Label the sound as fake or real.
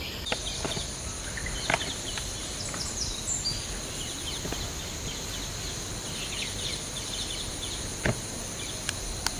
real